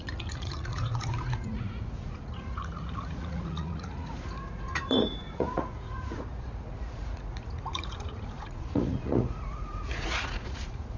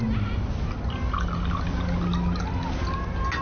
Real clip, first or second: second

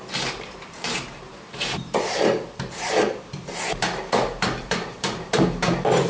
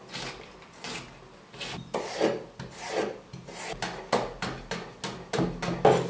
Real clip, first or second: second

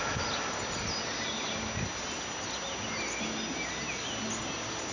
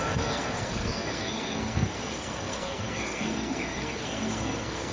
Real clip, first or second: first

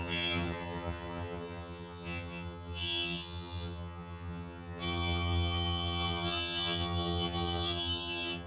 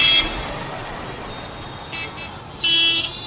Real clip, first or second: second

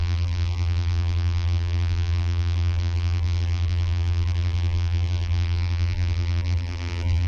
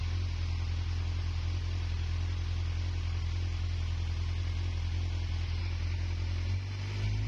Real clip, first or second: second